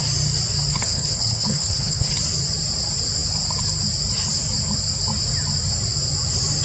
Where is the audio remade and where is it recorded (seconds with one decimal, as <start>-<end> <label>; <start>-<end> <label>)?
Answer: 0.0-0.7 recorded; 0.7-2.2 remade; 2.2-6.6 recorded